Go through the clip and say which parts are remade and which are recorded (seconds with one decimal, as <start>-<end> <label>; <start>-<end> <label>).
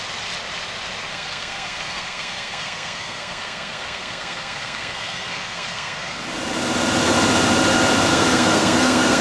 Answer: 0.0-1.1 recorded; 1.1-6.2 remade; 6.2-8.1 recorded; 8.1-9.2 remade